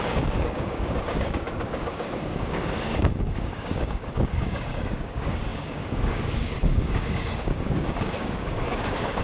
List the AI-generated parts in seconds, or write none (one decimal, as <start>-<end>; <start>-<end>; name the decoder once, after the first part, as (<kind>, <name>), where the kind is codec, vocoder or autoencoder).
0.0-9.2 (codec, DAC)